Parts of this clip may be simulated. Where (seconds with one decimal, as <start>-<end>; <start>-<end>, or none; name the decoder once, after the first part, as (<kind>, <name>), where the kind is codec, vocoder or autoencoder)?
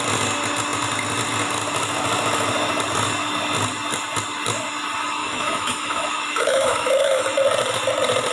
5.2-7.2 (autoencoder, DAC-VAE)